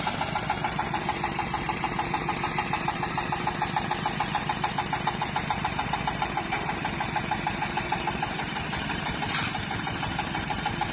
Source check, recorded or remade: remade